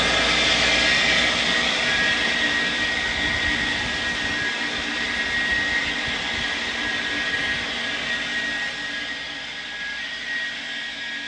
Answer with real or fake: real